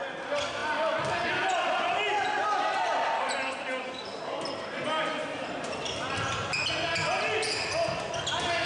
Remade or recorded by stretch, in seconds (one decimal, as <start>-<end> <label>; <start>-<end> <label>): 0.0-8.7 recorded